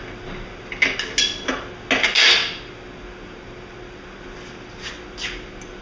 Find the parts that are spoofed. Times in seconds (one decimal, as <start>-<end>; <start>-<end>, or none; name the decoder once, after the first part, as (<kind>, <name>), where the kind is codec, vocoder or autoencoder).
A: none